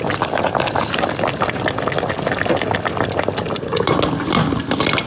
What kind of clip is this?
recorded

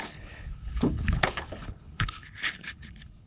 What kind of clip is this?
remade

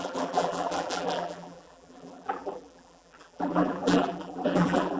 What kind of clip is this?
remade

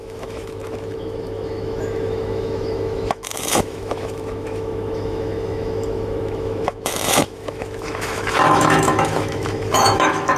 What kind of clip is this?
remade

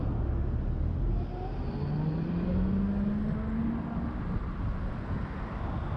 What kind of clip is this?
recorded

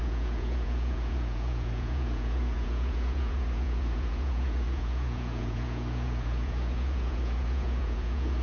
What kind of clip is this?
remade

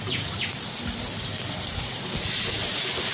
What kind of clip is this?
recorded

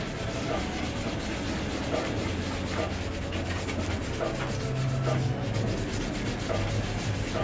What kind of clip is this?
recorded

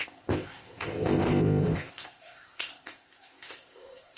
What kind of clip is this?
remade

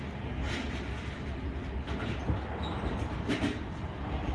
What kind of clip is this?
remade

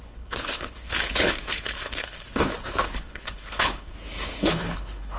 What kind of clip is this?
remade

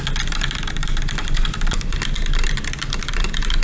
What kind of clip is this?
recorded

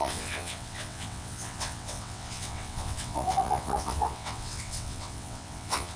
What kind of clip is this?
remade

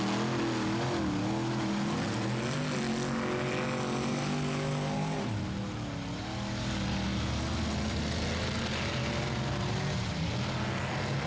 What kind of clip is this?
recorded